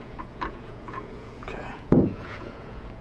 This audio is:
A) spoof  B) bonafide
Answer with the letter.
A